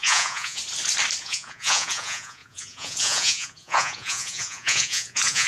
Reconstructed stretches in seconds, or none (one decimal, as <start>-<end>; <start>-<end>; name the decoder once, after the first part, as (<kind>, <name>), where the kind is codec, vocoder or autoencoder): 0.0-0.6 (vocoder, Vocos); 1.2-5.5